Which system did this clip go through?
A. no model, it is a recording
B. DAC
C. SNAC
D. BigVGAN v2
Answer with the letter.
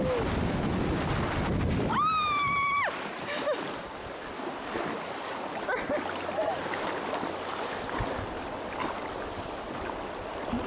A